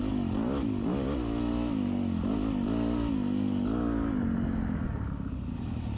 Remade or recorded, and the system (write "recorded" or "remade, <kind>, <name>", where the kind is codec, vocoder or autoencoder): recorded